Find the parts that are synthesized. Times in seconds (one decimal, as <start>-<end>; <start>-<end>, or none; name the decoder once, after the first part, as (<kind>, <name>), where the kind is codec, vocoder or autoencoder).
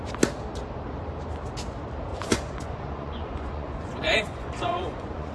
2.1-5.3 (vocoder, Vocos)